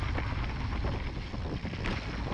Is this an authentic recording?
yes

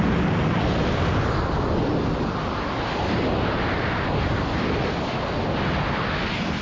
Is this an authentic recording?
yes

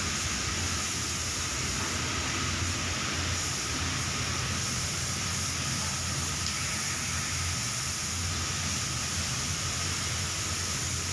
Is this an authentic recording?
yes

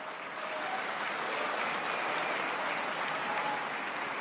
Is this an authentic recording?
yes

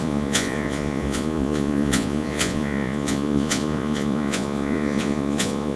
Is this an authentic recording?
no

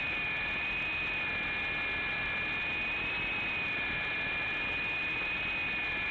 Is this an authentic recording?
yes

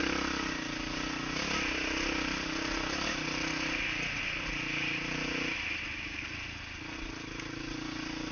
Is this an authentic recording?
yes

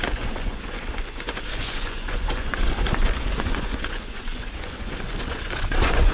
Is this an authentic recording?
no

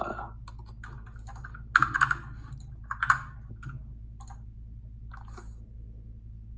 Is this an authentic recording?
yes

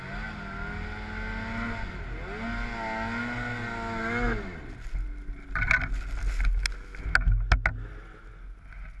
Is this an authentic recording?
yes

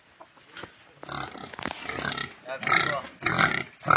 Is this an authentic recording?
yes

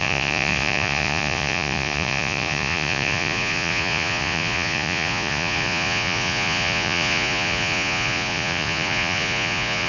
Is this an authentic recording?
no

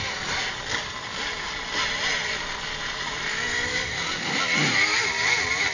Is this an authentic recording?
yes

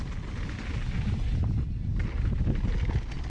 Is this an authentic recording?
yes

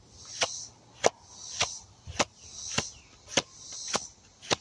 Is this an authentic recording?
yes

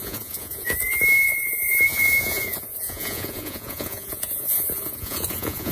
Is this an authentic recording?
no